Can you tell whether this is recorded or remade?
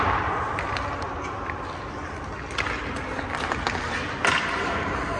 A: recorded